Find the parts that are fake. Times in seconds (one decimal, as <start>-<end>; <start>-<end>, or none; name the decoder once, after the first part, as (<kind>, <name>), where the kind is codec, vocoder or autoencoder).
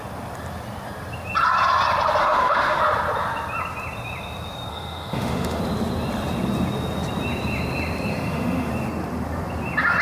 2.2-2.8 (autoencoder, DAC-VAE); 4.7-5.6; 8.1-8.7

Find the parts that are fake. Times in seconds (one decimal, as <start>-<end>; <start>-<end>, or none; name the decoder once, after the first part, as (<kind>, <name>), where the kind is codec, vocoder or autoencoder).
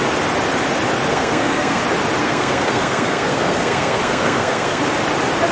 1.1-1.8 (codec, SNAC); 2.2-4.8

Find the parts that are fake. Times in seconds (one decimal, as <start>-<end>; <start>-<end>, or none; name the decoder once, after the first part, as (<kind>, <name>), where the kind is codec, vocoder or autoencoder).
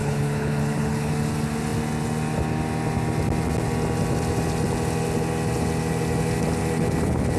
0.0-1.1 (codec, HILCodec)